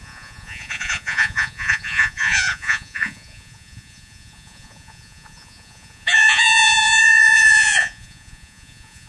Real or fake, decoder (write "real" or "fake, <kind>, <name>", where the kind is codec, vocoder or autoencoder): fake, vocoder, Vocos